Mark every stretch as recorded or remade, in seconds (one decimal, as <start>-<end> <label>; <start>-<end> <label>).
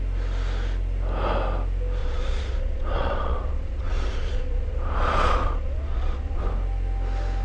0.0-2.0 recorded; 2.0-6.4 remade; 6.4-7.4 recorded